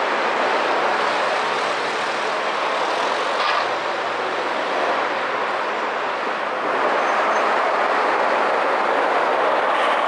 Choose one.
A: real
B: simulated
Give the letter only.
A